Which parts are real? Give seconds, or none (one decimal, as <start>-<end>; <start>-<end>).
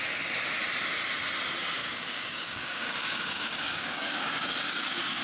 0.0-1.8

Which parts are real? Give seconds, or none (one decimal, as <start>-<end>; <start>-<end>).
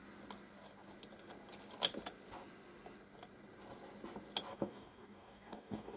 0.0-4.5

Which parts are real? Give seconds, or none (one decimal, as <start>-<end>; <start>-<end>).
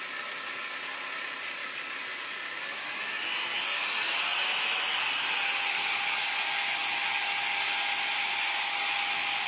0.0-9.5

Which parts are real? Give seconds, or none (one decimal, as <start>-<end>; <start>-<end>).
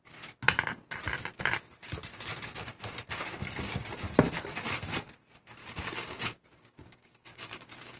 0.0-5.6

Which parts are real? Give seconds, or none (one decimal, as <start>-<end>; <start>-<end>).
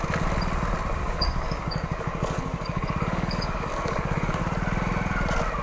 0.0-1.0; 4.4-5.6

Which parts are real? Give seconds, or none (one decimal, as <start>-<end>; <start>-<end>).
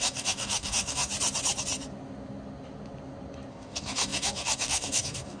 1.1-3.5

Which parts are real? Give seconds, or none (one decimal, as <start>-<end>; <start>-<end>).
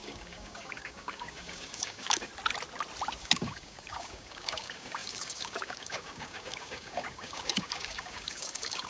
2.3-3.2